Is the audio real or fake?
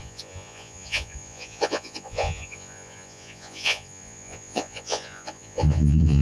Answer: fake